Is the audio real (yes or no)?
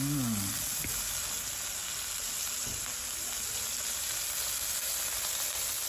yes